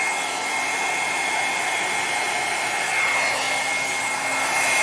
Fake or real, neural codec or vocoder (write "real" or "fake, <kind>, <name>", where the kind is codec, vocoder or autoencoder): real